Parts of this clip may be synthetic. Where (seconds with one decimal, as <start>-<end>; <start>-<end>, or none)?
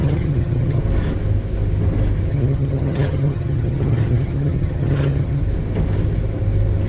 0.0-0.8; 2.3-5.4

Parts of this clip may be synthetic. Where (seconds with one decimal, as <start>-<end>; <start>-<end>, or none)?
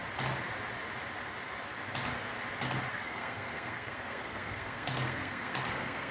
2.9-6.1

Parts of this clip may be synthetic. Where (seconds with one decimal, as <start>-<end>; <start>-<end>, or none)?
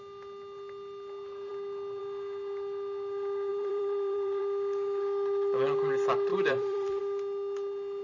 3.5-4.4; 6.3-7.0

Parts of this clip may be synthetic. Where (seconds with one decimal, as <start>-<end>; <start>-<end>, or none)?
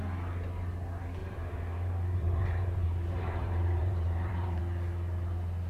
1.2-4.6